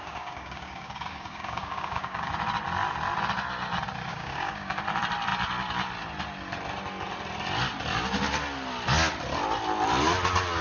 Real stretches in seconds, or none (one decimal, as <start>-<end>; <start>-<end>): 2.3-4.1; 4.8-10.6